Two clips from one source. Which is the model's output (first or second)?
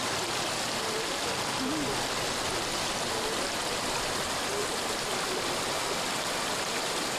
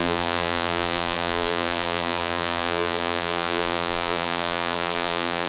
second